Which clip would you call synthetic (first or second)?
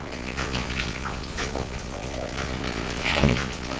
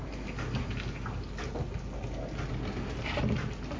first